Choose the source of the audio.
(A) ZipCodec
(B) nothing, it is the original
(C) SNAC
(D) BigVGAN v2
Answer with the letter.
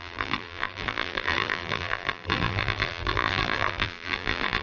D